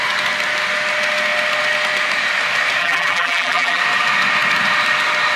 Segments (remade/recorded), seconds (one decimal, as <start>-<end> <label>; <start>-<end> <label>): 0.0-2.8 recorded; 2.8-3.8 remade; 3.8-5.4 recorded